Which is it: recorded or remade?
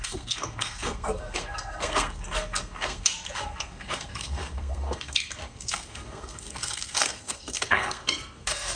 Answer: remade